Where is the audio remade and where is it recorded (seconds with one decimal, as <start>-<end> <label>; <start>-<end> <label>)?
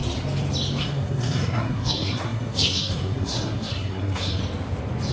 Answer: 0.0-0.8 recorded; 0.8-4.4 remade; 4.4-5.1 recorded